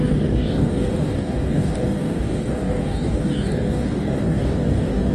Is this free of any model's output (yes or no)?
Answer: no